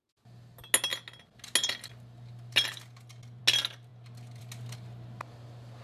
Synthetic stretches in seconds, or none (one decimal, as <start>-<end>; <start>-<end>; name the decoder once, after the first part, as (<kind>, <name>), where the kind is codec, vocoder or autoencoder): none